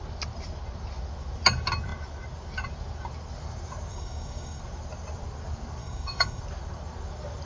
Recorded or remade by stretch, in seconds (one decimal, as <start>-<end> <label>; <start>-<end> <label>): 0.0-3.9 recorded; 3.9-4.6 remade; 4.6-5.8 recorded; 5.8-6.4 remade; 6.4-7.5 recorded